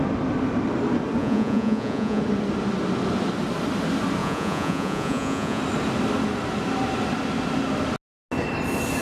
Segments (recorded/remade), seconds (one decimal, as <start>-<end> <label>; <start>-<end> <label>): 0.0-1.2 recorded; 1.2-2.2 remade; 2.2-4.2 recorded; 4.2-5.6 remade; 5.6-9.0 recorded